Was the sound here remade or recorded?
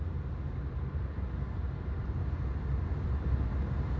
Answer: recorded